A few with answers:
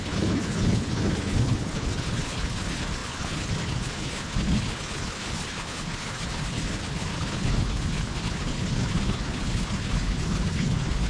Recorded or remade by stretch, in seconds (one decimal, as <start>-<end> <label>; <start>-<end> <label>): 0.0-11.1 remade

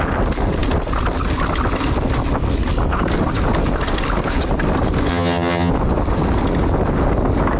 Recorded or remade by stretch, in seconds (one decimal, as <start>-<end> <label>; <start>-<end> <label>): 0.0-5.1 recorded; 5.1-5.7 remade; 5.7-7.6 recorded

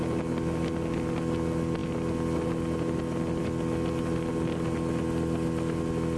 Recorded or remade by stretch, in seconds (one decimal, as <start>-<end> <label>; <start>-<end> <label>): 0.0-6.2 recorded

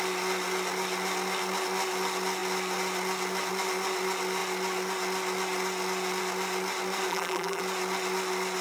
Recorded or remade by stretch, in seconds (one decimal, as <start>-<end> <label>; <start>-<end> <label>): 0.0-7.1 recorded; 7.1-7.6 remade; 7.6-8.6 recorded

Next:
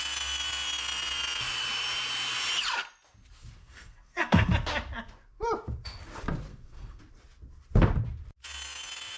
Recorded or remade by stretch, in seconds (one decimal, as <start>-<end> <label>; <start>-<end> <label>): 0.0-3.6 recorded; 3.6-4.5 remade; 4.5-6.5 recorded; 6.5-7.0 remade; 7.0-9.2 recorded

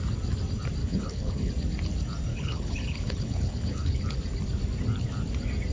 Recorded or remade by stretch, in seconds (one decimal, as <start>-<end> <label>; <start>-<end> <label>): 0.0-0.8 recorded; 0.8-1.5 remade; 1.5-2.3 recorded; 2.3-4.0 remade; 4.0-5.7 recorded

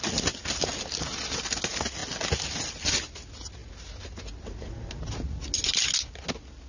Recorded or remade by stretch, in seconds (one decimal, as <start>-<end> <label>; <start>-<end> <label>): 0.0-6.7 recorded